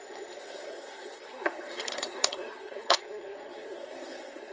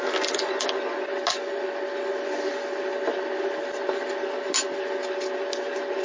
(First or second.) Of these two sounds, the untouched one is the second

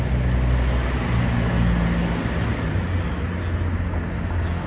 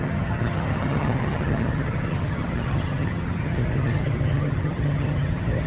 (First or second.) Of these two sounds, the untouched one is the first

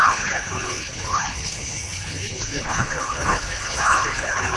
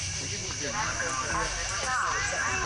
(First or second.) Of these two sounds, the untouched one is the second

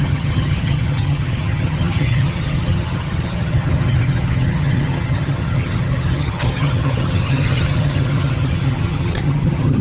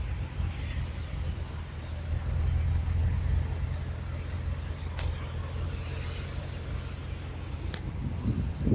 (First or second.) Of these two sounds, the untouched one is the second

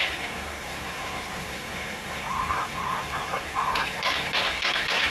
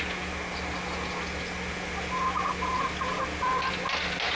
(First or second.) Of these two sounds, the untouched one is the second